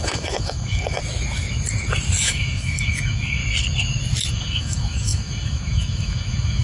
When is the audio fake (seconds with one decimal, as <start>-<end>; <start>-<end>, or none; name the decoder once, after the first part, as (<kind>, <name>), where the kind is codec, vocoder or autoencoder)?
0.0-1.0 (autoencoder, DAC-VAE); 2.2-3.4; 4.3-6.6